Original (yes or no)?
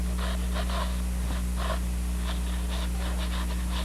yes